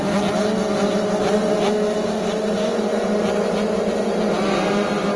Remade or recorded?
recorded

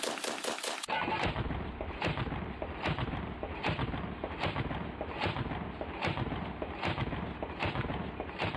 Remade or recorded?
recorded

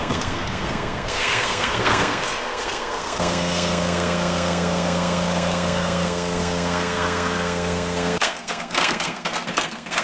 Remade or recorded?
remade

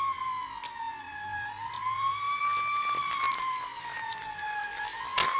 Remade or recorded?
recorded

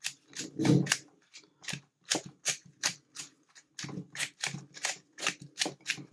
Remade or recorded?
recorded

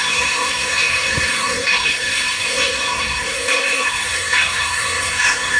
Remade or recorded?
remade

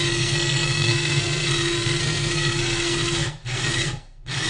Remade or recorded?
remade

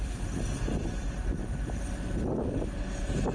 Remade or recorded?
recorded